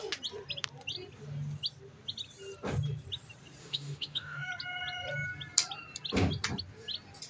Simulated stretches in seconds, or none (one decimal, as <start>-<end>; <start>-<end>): 3.6-4.5